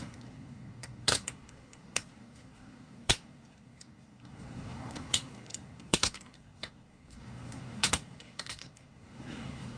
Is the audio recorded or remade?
remade